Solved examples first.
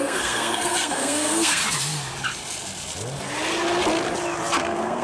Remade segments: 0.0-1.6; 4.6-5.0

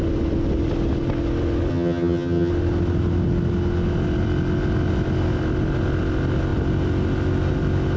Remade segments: 1.7-2.5

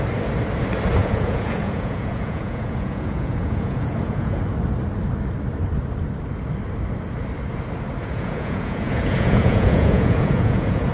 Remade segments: 1.0-4.4; 8.0-10.9

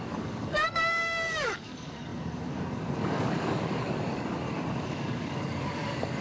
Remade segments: 0.0-6.2